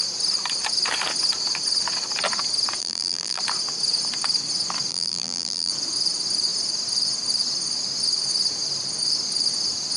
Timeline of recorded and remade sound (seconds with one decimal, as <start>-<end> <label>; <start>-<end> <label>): 0.0-2.8 recorded; 2.8-3.4 remade; 3.4-4.9 recorded; 4.9-5.7 remade; 5.7-10.0 recorded